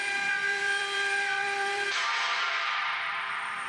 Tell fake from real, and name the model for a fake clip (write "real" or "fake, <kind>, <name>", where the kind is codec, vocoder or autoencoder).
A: fake, vocoder, BigVGAN v2